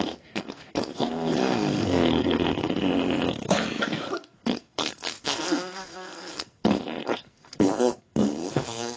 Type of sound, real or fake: fake